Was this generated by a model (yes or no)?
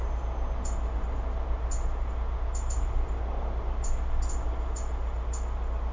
no